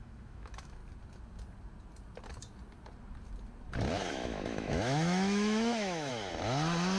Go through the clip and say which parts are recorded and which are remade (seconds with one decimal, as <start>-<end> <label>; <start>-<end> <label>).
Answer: 0.0-0.8 remade; 0.8-4.1 recorded; 4.1-6.1 remade; 6.1-7.0 recorded